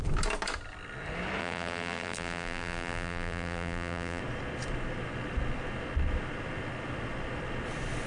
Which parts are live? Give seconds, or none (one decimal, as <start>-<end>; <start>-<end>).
0.0-1.4; 4.2-8.1